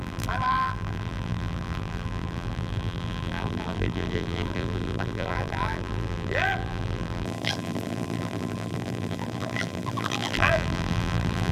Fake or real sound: fake